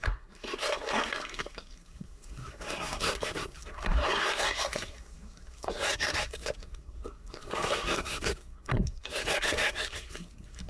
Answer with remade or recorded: remade